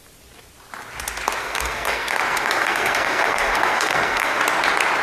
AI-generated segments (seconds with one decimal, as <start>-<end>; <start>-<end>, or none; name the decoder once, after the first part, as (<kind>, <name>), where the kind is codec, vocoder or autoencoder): 1.4-4.4 (codec, SNAC)